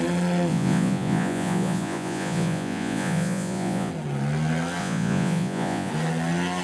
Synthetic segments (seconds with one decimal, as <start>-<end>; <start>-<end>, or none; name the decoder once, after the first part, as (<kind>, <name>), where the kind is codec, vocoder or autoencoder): 0.5-3.9 (vocoder, Vocos); 4.8-5.9